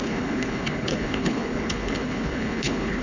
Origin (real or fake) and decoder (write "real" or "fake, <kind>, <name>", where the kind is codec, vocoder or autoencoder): fake, codec, HILCodec